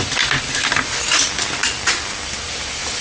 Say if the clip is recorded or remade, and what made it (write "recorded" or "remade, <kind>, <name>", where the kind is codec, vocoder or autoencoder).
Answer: recorded